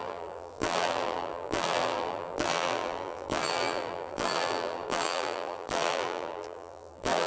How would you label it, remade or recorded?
remade